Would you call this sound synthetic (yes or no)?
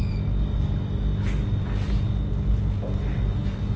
no